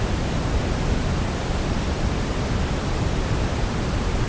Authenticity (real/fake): real